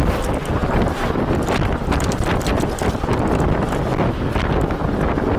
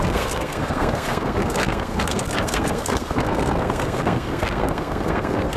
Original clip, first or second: first